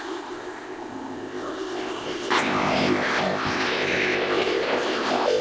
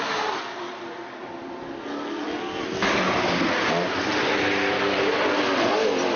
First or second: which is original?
second